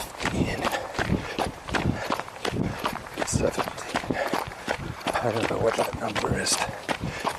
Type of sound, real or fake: fake